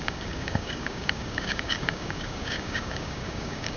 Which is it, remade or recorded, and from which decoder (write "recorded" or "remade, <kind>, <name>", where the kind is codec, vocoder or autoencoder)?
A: remade, codec, DAC